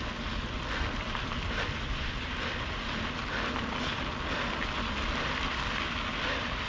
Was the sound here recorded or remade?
recorded